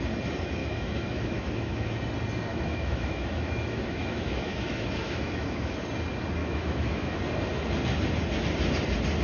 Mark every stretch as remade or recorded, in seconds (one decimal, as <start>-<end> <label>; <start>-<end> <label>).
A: 0.0-0.6 recorded; 0.6-2.0 remade; 2.0-2.5 recorded; 2.5-5.7 remade; 5.7-6.4 recorded; 6.4-7.2 remade; 7.2-9.2 recorded